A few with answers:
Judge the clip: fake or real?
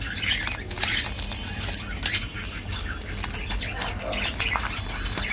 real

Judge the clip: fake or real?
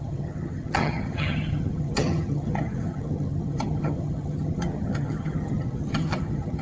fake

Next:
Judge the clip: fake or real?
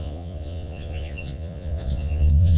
fake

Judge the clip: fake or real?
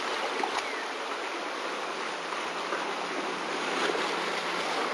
real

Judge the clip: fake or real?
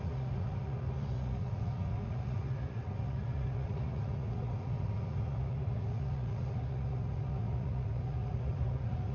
fake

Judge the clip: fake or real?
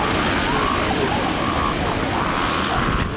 real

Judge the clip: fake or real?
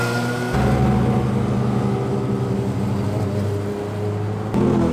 real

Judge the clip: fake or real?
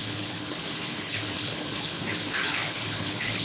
fake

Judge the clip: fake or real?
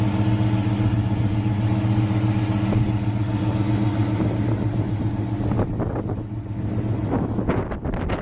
real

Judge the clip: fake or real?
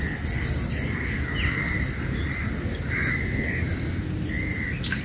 real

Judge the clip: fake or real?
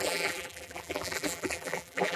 fake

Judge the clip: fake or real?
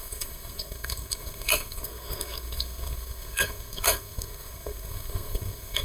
fake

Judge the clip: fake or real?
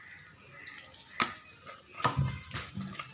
real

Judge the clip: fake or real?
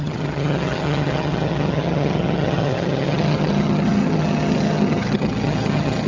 fake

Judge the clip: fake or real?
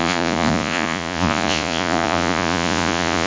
fake